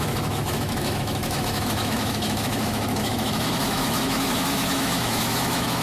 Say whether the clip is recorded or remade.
remade